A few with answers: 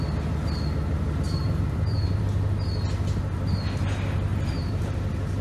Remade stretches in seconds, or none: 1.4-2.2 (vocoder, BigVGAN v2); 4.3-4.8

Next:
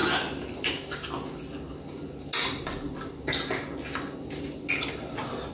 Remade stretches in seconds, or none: none

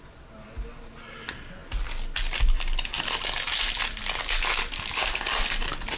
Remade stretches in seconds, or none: none

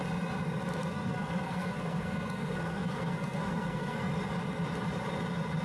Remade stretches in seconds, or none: 0.8-4.1 (codec, SNAC)

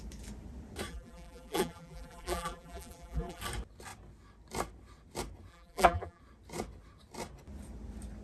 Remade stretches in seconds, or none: 0.9-3.4 (vocoder, BigVGAN v2); 5.5-6.2